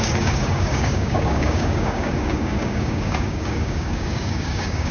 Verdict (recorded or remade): remade